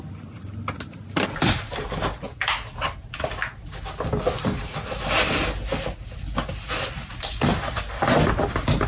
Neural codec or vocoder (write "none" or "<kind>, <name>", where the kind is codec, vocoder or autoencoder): none